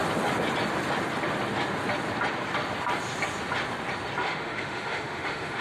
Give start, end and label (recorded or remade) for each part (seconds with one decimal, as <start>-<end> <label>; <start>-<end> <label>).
0.0-4.2 recorded; 4.2-5.6 remade